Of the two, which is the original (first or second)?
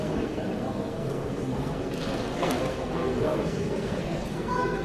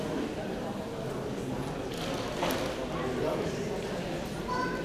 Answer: second